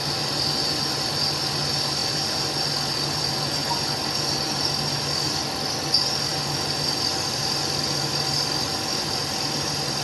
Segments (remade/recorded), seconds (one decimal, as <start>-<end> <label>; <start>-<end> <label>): 0.0-10.0 recorded